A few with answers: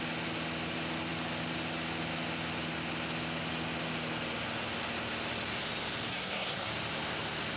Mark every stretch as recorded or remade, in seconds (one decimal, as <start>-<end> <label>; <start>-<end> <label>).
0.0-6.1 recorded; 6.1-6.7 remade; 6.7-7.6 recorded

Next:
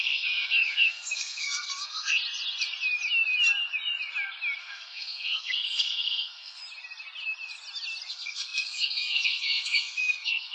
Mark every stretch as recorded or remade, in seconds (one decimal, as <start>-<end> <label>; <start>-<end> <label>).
0.0-2.2 remade; 2.2-4.6 recorded; 4.6-6.6 remade; 6.6-8.1 recorded; 8.1-10.5 remade

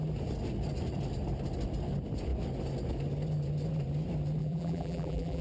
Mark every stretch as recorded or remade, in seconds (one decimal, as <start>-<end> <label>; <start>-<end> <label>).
0.0-4.4 recorded; 4.4-5.4 remade

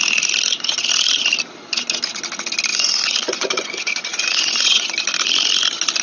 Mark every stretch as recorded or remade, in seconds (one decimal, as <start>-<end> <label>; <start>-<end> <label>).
0.0-2.7 recorded; 2.7-4.9 remade; 4.9-6.0 recorded

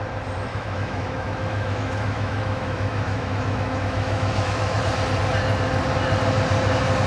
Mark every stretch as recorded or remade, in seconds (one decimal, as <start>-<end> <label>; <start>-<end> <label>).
0.0-0.5 recorded; 0.5-4.8 remade; 4.8-7.1 recorded